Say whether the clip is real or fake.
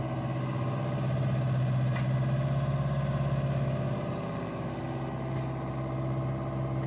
real